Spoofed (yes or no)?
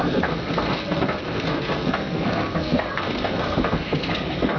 yes